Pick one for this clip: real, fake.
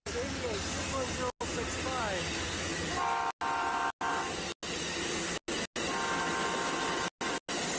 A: real